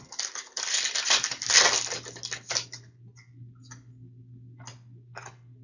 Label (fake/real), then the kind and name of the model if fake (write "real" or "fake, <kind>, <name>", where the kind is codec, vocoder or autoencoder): real